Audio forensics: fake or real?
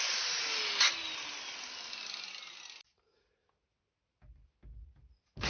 real